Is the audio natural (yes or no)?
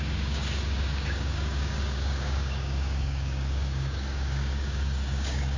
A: no